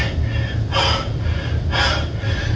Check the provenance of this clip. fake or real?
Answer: real